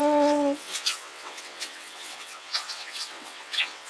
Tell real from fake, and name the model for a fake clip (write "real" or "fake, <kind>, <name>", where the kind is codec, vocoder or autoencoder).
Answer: fake, vocoder, WaveNeXt